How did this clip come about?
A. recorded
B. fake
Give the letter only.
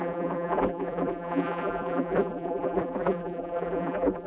B